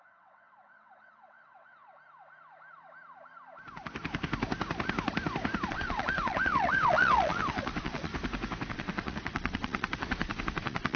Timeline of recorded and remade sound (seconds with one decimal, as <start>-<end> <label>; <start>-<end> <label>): 0.0-1.8 remade; 1.8-5.7 recorded; 5.7-8.1 remade; 8.1-8.7 recorded; 8.7-11.0 remade